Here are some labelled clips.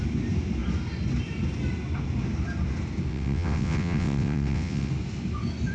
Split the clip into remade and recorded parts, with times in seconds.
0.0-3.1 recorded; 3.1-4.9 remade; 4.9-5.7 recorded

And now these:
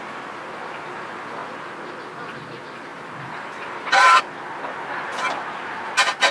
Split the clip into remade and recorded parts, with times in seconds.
0.0-2.9 recorded; 2.9-4.2 remade; 4.2-6.3 recorded

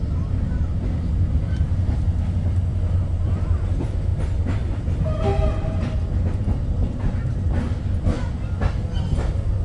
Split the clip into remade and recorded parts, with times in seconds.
0.0-9.6 recorded

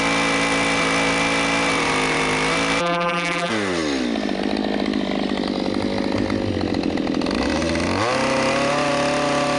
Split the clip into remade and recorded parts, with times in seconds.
0.0-2.8 recorded; 2.8-3.5 remade; 3.5-9.6 recorded